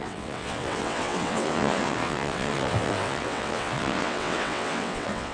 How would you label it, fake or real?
fake